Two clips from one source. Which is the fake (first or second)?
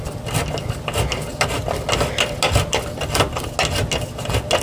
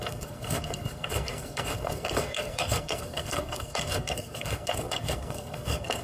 second